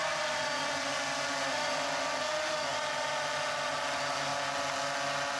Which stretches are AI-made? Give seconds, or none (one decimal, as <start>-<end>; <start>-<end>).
none